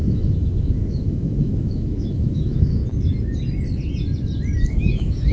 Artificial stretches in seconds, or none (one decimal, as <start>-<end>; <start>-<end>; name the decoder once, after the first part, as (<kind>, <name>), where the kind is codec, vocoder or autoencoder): 0.0-2.8 (autoencoder, DAC-VAE); 4.7-5.3